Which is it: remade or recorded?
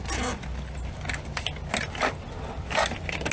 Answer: recorded